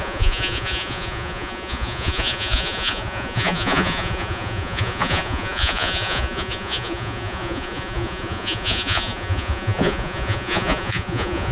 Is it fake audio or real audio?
fake